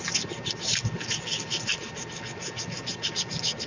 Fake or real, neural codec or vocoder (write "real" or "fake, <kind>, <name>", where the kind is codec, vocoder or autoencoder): real